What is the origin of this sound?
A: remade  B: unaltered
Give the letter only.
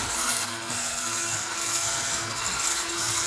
A